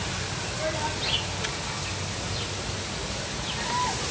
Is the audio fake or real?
real